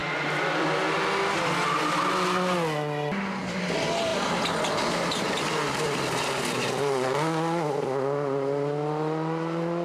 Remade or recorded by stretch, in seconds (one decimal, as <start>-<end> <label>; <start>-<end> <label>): 0.0-9.8 recorded